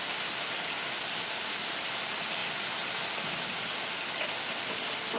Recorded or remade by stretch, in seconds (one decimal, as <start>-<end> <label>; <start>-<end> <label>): 0.0-5.2 recorded

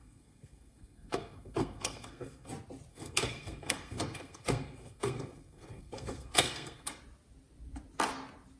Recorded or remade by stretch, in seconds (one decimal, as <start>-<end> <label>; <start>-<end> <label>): 0.0-2.5 remade; 2.5-2.9 recorded; 2.9-7.0 remade; 7.0-8.6 recorded

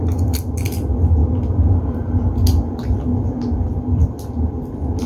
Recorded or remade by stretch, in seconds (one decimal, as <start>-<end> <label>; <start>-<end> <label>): 0.0-5.1 recorded

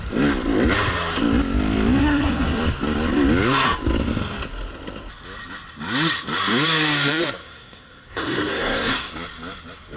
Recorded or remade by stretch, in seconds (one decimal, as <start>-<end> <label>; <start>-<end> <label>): 0.0-2.0 recorded; 2.0-2.6 remade; 2.6-7.4 recorded; 7.4-9.1 remade; 9.1-10.0 recorded

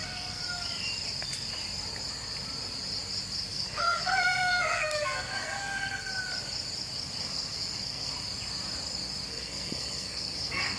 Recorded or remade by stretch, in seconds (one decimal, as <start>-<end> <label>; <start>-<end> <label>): 0.0-0.4 remade; 0.4-3.5 recorded; 3.5-6.1 remade; 6.1-7.2 recorded; 7.2-8.1 remade; 8.1-9.3 recorded; 9.3-10.8 remade

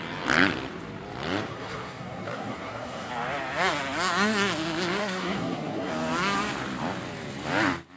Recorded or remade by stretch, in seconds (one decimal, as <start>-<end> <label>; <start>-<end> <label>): 0.0-1.5 recorded; 1.5-3.1 remade; 3.1-5.0 recorded; 5.0-5.9 remade; 5.9-8.0 recorded

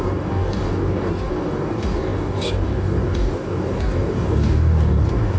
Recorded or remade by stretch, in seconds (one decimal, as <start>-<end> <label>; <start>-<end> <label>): 0.0-5.4 remade